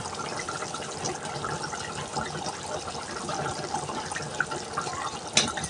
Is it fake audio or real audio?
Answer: real